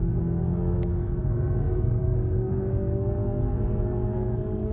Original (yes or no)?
no